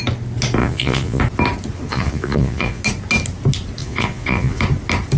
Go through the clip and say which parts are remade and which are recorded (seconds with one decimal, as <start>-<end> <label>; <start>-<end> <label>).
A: 0.0-0.6 recorded; 0.6-1.2 remade; 1.2-1.9 recorded; 1.9-2.8 remade; 2.8-3.8 recorded; 3.8-4.6 remade; 4.6-5.2 recorded